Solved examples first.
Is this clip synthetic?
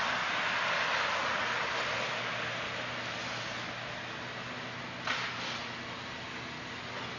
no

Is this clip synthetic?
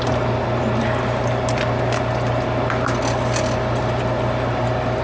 no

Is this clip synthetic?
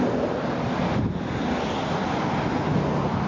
no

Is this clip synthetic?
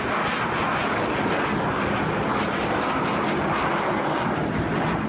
no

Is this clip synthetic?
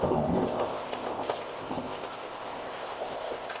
yes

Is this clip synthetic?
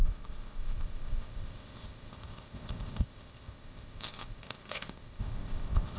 yes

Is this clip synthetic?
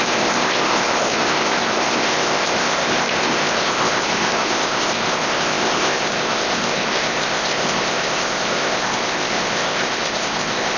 yes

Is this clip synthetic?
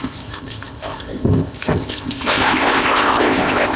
yes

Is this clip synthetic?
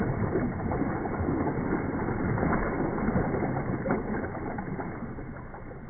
no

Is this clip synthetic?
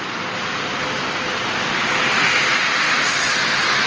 no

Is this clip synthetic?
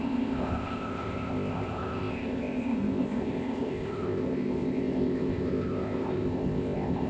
yes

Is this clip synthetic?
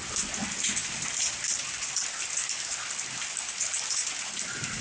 no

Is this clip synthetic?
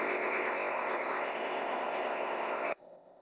yes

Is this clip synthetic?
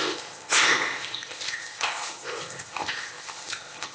yes